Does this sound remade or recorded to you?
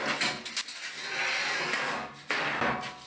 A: recorded